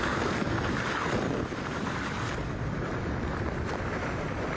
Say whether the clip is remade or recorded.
remade